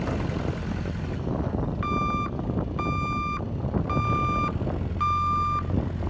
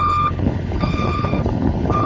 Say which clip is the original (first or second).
first